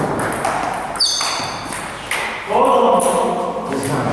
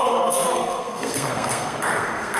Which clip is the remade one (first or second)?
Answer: second